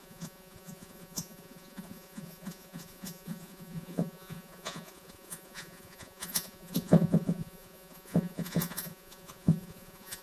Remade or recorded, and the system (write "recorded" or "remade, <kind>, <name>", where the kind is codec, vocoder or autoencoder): remade, vocoder, Vocos